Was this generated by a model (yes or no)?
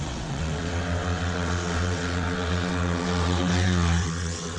yes